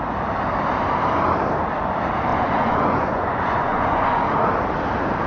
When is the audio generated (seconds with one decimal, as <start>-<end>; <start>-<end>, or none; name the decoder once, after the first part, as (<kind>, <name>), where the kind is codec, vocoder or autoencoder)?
2.3-4.2 (vocoder, Vocos)